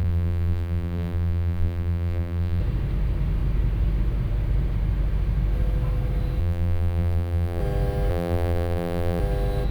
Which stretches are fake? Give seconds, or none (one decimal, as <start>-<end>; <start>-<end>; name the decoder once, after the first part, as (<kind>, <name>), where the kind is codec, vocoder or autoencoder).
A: 0.0-2.6 (vocoder, BigVGAN v2); 6.4-7.6; 8.1-9.2